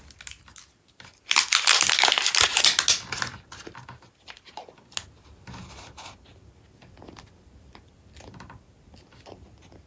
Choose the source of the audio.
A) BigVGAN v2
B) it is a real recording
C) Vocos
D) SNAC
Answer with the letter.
B